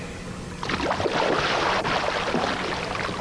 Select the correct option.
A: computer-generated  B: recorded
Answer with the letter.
B